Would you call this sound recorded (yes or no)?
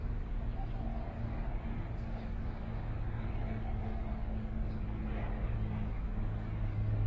no